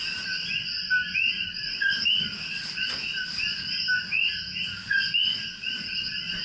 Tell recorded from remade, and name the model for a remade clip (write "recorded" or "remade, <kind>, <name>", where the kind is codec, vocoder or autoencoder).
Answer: recorded